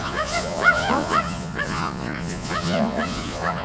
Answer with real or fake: fake